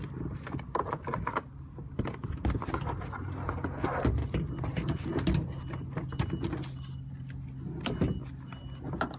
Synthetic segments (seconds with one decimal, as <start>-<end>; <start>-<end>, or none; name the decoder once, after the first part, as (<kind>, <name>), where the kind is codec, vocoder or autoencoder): none